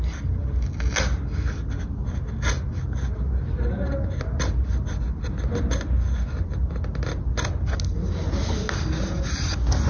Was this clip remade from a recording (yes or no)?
no